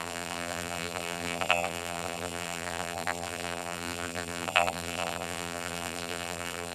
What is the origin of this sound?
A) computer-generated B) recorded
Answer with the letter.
A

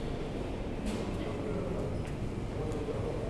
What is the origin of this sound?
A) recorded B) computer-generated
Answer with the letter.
A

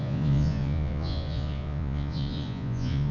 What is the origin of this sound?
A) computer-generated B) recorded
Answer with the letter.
A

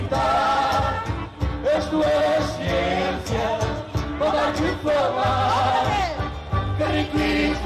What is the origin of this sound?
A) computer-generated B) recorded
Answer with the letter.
B